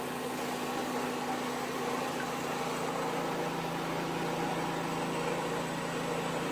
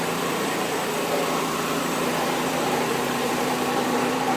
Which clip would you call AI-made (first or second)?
second